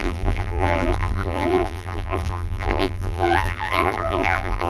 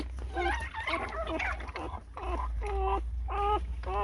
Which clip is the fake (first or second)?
first